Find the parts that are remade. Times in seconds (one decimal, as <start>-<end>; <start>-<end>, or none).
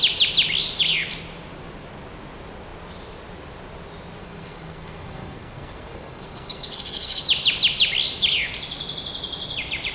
4.2-7.2